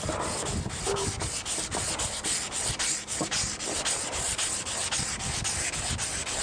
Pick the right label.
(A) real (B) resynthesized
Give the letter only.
A